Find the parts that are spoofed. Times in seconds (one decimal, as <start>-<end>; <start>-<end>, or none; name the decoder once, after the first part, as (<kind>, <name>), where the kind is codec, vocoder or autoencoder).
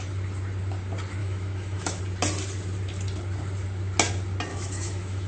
1.2-2.0 (autoencoder, DAC-VAE); 4.5-5.3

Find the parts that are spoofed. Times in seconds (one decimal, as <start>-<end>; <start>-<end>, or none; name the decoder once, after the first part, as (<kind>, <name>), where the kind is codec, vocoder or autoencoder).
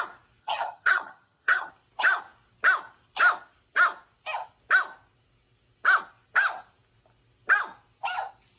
0.4-1.7 (vocoder, HiFi-GAN)